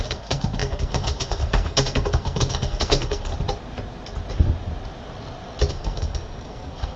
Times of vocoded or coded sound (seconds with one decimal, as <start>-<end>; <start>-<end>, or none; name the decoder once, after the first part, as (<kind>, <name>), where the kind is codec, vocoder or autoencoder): 0.0-3.3 (codec, SNAC); 5.7-7.0